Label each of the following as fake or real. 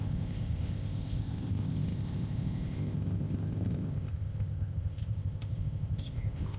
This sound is fake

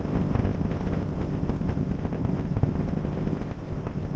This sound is fake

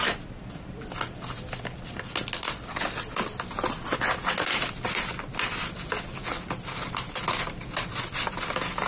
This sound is real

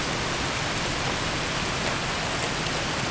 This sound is real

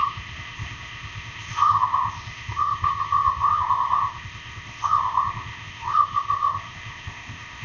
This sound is fake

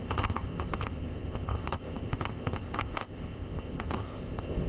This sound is fake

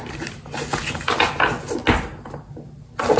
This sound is real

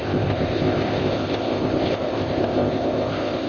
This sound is fake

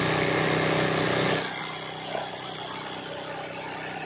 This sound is real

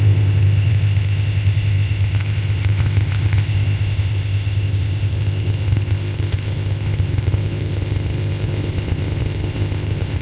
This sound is fake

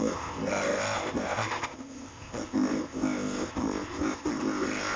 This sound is fake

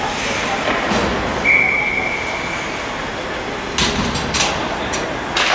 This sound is real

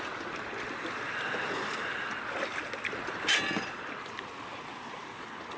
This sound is real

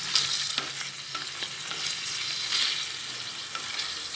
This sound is real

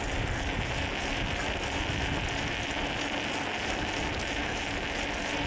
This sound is real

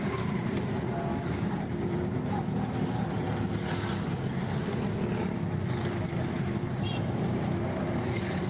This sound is real